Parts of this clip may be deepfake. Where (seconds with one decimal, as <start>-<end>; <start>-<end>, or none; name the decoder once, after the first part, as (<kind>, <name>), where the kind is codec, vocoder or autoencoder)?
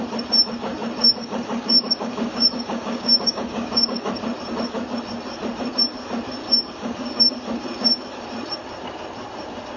1.0-4.1 (codec, DAC); 6.4-7.3